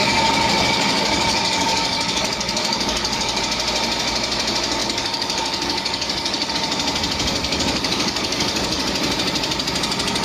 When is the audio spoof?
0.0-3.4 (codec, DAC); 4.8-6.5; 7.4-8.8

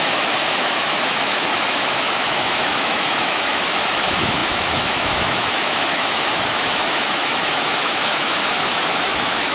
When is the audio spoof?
0.0-9.5 (autoencoder, DAC-VAE)

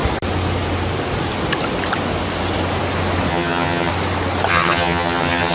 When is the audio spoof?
3.3-3.9 (vocoder, HiFi-GAN); 4.5-5.5

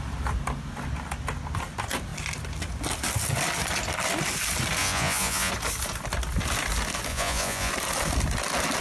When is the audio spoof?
4.8-5.5 (vocoder, Vocos); 7.1-7.7

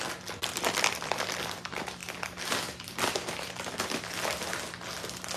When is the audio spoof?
0.0-5.4 (vocoder, BigVGAN v2)

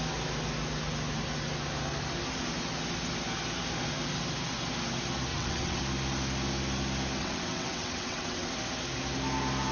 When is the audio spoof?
5.3-5.8 (vocoder, WaveNeXt); 7.2-8.5

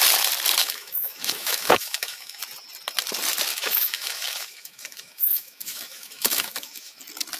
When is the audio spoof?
0.6-2.4 (autoencoder, DAC-VAE); 3.5-7.0